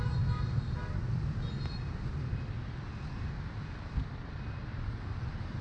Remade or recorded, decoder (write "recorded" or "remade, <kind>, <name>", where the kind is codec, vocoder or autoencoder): recorded